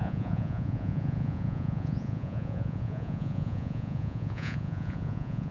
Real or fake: fake